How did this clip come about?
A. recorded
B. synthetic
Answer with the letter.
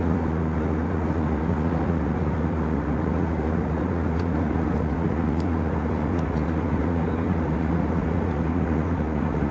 B